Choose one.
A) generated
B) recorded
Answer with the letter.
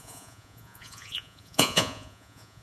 A